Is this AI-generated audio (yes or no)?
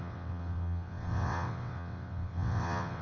yes